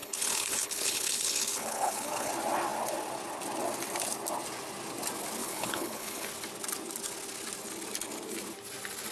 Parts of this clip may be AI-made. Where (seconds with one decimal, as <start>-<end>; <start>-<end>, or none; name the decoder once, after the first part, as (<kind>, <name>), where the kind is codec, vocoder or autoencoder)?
0.0-2.3 (codec, HILCodec); 5.4-6.3